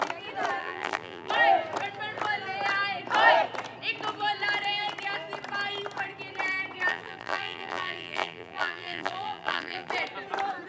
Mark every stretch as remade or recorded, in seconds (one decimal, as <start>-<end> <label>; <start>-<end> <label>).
0.0-0.6 recorded; 0.6-1.3 remade; 1.3-6.9 recorded; 6.9-9.9 remade; 9.9-10.7 recorded